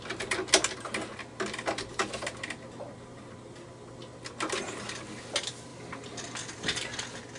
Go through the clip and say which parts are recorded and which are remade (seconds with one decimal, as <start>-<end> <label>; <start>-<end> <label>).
0.0-7.4 recorded